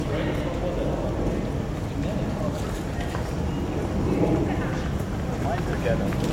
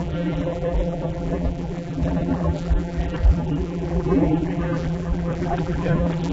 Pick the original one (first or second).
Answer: first